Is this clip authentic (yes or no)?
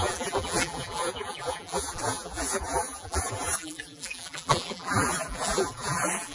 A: no